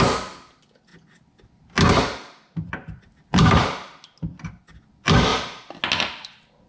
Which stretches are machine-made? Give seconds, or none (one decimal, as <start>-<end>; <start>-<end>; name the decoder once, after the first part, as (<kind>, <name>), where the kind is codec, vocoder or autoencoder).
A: none